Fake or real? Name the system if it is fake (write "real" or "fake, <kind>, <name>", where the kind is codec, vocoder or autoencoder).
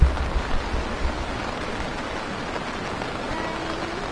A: real